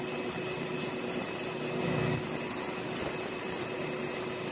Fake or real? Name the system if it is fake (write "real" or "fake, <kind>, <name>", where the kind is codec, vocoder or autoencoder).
real